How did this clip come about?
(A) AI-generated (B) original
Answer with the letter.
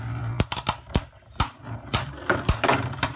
A